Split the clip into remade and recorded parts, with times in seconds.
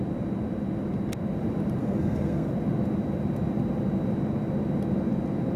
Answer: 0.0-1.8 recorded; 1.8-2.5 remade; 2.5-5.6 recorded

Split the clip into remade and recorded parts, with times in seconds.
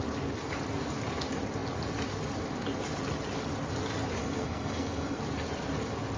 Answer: 0.0-4.2 recorded; 4.2-5.2 remade; 5.2-6.2 recorded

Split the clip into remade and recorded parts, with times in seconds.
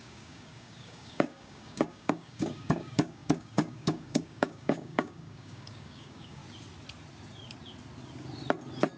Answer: 0.0-6.4 remade; 6.4-9.0 recorded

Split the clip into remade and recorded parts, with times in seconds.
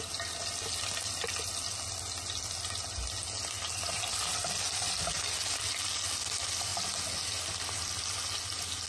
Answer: 0.0-8.9 recorded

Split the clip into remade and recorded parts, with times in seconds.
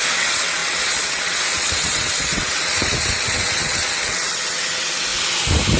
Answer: 0.0-5.1 remade; 5.1-5.8 recorded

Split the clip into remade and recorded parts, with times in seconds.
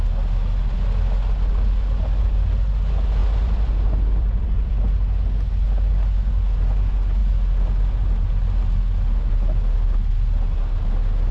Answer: 0.0-3.2 recorded; 3.2-4.7 remade; 4.7-11.3 recorded